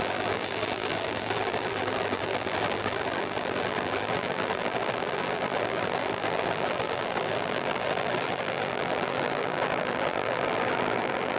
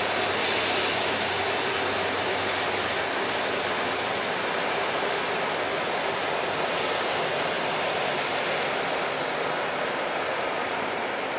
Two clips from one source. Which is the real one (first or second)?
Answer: second